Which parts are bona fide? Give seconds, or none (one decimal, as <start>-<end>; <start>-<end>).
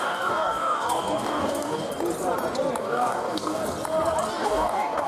1.9-2.8; 3.6-4.3